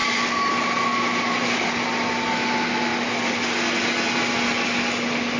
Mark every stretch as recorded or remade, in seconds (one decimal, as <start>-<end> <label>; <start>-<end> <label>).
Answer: 0.0-5.4 recorded